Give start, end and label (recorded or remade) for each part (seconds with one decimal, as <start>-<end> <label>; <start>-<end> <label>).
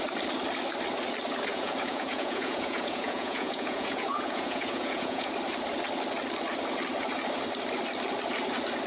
0.0-1.5 recorded; 1.5-5.3 remade; 5.3-8.9 recorded